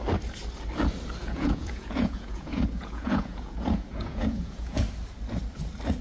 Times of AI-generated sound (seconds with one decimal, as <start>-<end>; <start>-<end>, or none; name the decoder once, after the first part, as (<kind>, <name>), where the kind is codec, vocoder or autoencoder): 1.2-4.8 (vocoder, Vocos)